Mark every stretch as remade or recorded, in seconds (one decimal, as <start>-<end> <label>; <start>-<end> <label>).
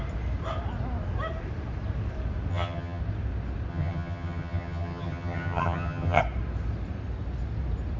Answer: 0.0-2.5 recorded; 2.5-3.0 remade; 3.0-3.7 recorded; 3.7-6.2 remade; 6.2-8.0 recorded